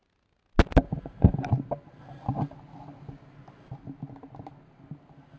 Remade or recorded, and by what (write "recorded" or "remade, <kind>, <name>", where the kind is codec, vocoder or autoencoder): recorded